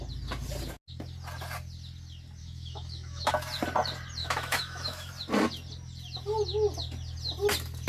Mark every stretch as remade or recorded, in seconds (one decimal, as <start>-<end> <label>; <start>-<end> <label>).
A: 0.0-2.4 recorded; 2.4-3.3 remade; 3.3-4.2 recorded; 4.2-5.1 remade; 5.1-7.9 recorded